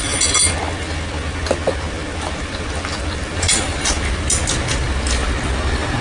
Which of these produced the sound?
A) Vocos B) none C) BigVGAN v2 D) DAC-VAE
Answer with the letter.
B